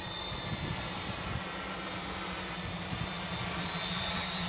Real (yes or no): yes